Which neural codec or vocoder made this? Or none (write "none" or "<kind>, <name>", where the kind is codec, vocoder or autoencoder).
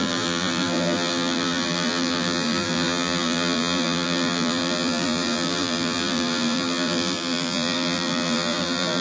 vocoder, BigVGAN v2